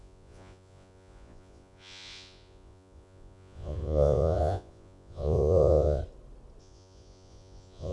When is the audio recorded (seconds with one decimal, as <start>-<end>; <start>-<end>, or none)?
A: 6.0-6.6

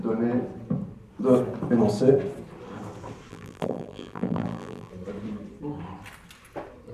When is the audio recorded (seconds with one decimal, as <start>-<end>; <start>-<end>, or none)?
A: 0.0-3.3; 4.9-6.9